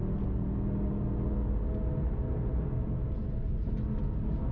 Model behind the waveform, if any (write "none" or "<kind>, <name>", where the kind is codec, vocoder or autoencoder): none